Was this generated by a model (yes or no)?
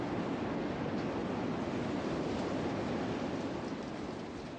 no